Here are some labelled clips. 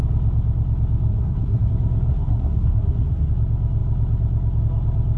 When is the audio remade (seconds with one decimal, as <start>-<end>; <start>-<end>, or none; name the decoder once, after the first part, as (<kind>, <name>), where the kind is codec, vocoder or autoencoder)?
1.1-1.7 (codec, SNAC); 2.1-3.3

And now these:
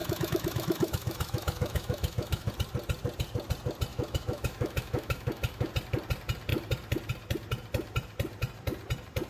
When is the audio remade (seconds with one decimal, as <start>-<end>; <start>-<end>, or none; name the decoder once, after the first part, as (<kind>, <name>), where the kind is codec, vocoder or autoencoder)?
0.0-2.5 (autoencoder, DAC-VAE); 3.9-5.7

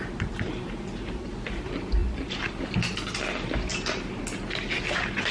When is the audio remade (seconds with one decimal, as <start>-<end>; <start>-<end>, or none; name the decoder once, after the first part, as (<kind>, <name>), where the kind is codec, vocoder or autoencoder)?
2.0-2.6 (vocoder, BigVGAN v2); 3.7-4.2

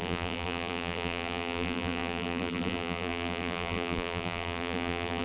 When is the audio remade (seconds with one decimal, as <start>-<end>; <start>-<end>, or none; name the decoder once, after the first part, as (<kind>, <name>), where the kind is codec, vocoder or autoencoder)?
0.0-5.2 (vocoder, BigVGAN v2)

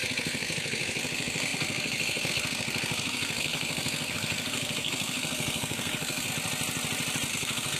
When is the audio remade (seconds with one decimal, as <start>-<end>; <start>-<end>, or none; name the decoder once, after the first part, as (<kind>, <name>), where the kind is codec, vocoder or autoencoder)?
0.0-6.3 (codec, SNAC); 7.3-7.8